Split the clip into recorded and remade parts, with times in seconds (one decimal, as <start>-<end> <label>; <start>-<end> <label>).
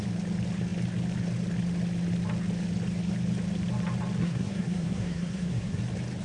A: 0.0-4.2 recorded; 4.2-5.8 remade; 5.8-6.2 recorded